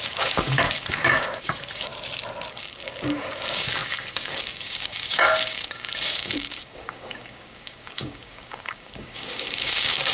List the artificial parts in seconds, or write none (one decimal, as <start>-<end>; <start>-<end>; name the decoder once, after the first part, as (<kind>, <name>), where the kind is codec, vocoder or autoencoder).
0.0-1.9 (codec, DAC); 2.5-10.1